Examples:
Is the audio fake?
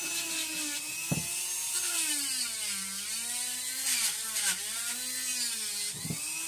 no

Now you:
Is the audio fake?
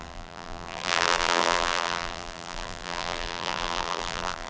yes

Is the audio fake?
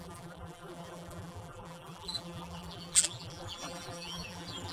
yes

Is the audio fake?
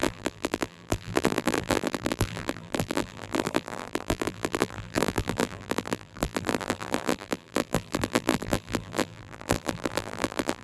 yes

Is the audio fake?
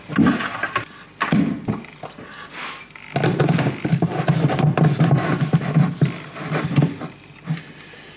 no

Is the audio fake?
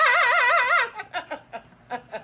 no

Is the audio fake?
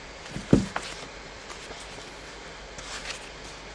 no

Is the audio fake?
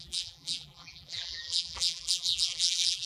yes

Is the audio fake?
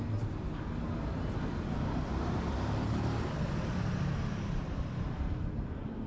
no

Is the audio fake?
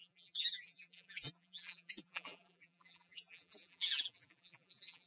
yes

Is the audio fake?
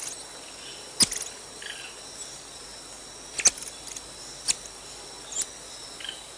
no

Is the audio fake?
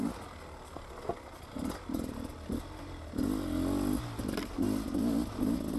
no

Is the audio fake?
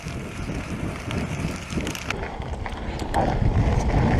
no